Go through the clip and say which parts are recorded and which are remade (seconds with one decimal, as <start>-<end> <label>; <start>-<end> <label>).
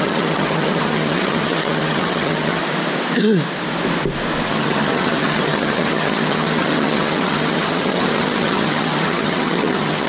0.0-2.6 remade; 2.6-4.5 recorded; 4.5-10.1 remade